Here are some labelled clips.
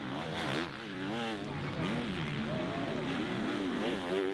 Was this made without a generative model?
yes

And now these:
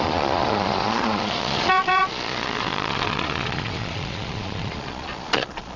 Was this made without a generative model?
no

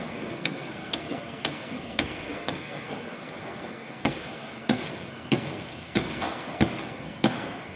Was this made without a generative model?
no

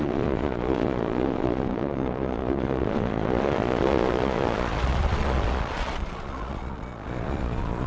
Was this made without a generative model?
no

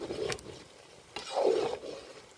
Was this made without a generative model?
yes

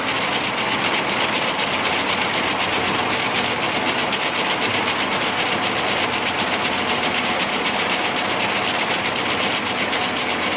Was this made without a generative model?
yes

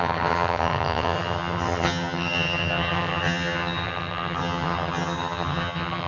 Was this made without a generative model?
no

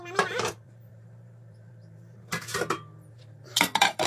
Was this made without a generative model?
no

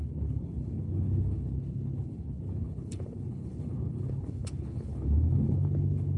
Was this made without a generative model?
no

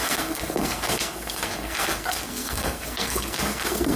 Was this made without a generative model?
no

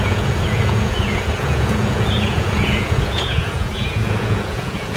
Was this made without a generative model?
no